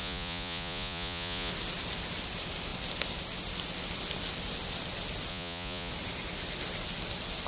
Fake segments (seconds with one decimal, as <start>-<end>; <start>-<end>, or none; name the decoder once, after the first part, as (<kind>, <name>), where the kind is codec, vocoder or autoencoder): 0.0-1.5 (vocoder, Vocos); 5.3-5.9